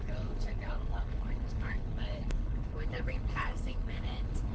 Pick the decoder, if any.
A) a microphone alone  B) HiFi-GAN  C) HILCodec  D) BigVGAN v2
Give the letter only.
C